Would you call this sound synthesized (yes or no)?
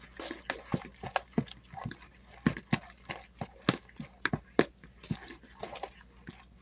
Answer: no